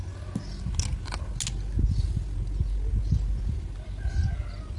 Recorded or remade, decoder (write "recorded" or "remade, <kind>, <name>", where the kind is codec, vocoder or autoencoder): recorded